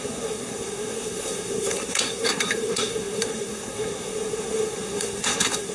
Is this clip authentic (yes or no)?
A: no